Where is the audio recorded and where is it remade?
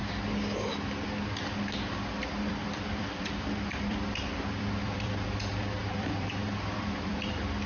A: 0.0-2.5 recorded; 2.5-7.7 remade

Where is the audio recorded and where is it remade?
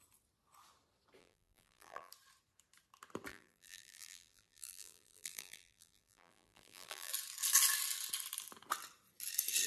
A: 0.0-1.2 recorded; 1.2-2.1 remade; 2.1-3.3 recorded; 3.3-7.1 remade; 7.1-9.7 recorded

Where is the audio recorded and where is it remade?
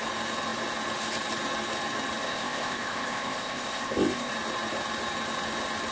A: 0.0-2.2 recorded; 2.2-4.3 remade; 4.3-5.9 recorded